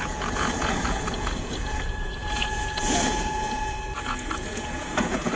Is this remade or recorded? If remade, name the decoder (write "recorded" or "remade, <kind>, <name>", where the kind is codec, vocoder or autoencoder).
remade, vocoder, Vocos